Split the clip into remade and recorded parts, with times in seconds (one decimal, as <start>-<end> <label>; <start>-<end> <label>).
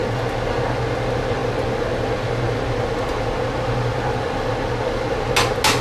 0.0-5.8 recorded